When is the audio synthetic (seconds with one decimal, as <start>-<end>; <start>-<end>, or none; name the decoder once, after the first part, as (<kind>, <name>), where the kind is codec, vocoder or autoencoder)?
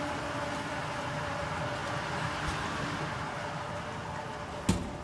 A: none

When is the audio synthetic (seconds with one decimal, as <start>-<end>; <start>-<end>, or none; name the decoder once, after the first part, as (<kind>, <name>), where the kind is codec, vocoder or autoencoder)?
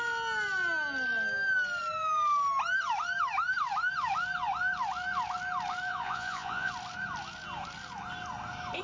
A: 5.9-6.7 (vocoder, Vocos)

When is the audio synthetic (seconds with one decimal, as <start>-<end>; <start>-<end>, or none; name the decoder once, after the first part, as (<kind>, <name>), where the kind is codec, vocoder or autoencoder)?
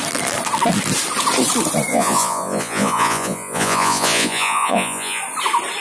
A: 1.9-5.2 (vocoder, Vocos)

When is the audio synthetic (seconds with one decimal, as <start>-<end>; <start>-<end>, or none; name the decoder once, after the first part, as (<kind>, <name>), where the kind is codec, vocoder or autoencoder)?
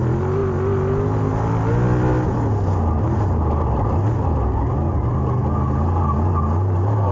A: none